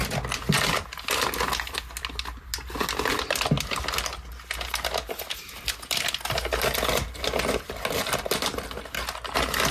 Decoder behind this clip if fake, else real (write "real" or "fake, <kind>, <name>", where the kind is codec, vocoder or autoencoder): real